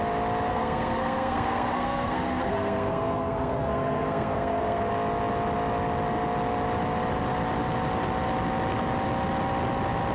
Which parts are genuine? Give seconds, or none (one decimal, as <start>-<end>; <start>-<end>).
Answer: 0.0-0.5; 4.9-10.1